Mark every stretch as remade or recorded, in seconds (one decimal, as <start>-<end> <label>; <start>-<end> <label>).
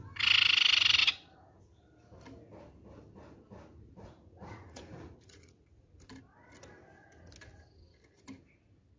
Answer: 0.0-1.0 recorded; 1.0-1.6 remade; 1.6-3.7 recorded; 3.7-5.9 remade; 5.9-9.0 recorded